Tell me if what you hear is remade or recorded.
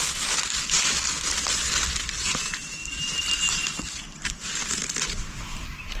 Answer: recorded